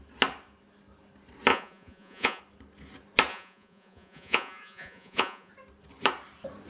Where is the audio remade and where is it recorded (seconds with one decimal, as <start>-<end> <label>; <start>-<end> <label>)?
0.0-1.5 recorded; 1.5-2.4 remade; 2.4-3.3 recorded; 3.3-5.5 remade; 5.5-6.7 recorded